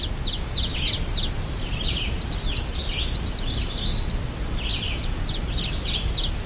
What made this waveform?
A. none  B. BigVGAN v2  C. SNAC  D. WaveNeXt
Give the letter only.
A